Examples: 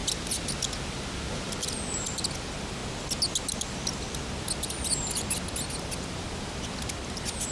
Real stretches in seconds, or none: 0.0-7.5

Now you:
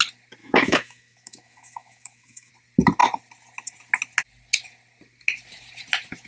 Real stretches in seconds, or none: 0.0-0.4; 2.5-6.3

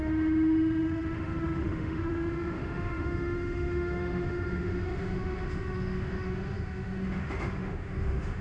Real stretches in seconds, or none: none

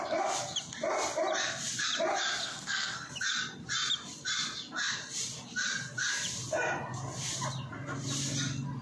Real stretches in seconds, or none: 0.0-2.4; 3.1-8.8

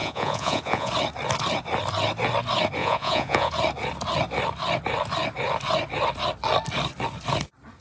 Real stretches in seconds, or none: 0.9-2.8; 3.5-7.8